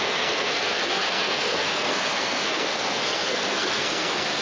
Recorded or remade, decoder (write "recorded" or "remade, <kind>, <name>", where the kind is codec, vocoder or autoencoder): remade, codec, SNAC